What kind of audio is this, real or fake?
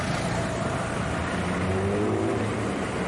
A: real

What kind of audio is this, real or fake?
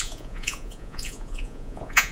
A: fake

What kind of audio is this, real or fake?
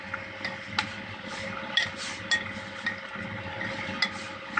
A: real